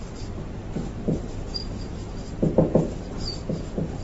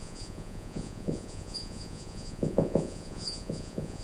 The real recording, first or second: first